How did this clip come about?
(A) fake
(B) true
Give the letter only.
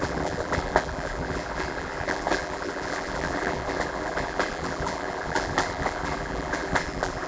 A